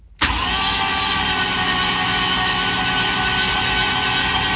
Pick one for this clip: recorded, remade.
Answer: recorded